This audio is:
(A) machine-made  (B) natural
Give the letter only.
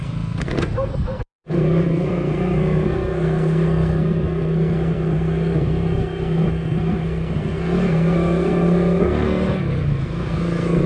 A